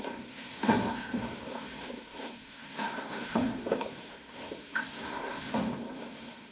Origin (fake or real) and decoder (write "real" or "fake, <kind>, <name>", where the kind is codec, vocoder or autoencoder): fake, codec, SNAC